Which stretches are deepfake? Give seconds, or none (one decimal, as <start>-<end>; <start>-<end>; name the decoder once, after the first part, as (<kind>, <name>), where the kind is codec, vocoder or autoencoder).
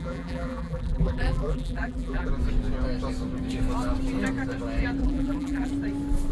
0.0-2.3 (vocoder, BigVGAN v2); 5.0-5.7